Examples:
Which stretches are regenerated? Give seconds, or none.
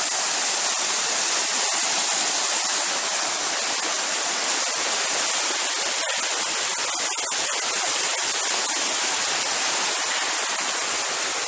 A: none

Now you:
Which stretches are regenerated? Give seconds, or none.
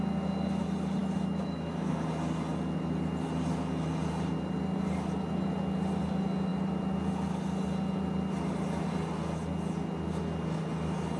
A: 1.0-1.9 (autoencoder, DAC-VAE)